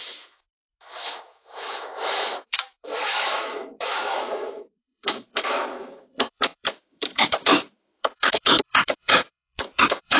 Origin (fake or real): fake